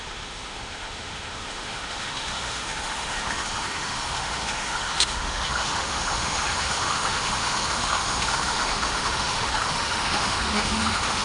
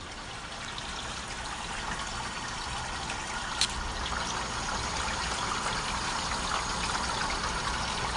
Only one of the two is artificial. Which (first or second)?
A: first